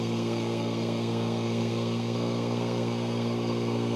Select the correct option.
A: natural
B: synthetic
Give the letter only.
B